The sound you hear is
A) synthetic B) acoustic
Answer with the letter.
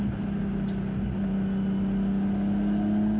B